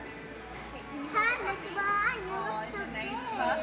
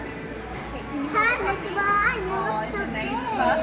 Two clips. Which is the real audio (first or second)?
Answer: first